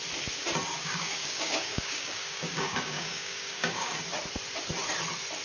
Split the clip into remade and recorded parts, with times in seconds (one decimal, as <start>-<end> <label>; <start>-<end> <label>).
0.0-0.8 recorded; 0.8-4.0 remade; 4.0-5.4 recorded